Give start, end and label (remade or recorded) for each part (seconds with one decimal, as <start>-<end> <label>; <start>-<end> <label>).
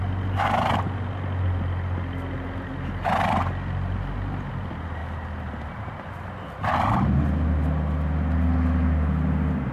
0.0-9.7 recorded